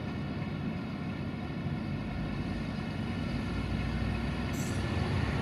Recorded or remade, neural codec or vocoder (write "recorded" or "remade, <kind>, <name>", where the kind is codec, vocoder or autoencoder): recorded